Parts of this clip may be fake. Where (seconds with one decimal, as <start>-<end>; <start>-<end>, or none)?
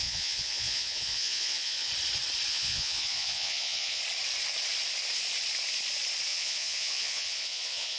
0.0-1.9; 2.5-4.0; 6.3-8.0